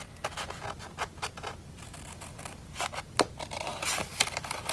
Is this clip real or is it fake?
real